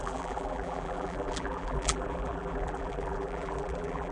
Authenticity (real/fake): fake